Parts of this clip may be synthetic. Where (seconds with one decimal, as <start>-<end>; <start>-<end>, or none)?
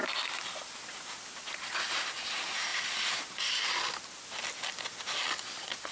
none